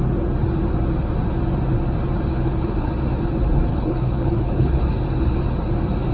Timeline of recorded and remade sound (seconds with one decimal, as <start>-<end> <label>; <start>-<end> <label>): 0.0-2.3 recorded; 2.3-2.9 remade; 2.9-3.7 recorded; 3.7-4.8 remade; 4.8-6.1 recorded